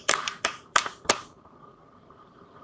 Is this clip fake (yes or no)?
yes